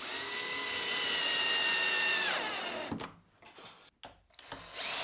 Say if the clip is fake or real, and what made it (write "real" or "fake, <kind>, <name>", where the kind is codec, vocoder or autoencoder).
real